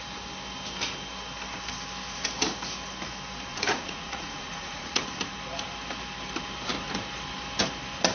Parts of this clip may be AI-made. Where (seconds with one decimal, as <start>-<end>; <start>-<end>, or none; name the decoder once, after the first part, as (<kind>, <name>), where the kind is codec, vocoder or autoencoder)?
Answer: 3.5-5.3 (vocoder, Vocos)